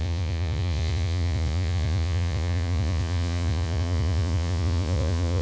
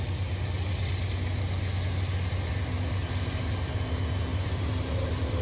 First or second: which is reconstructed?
first